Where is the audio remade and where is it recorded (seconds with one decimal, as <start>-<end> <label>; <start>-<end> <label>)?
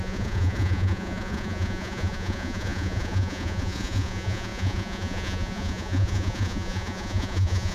0.0-7.7 remade